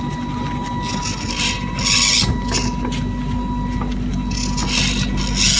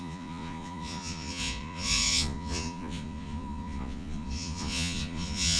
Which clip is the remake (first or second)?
second